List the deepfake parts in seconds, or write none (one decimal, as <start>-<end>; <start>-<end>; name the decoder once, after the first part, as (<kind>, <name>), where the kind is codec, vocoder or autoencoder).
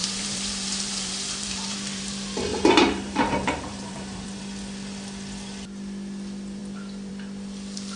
0.0-2.1 (vocoder, BigVGAN v2); 2.5-4.4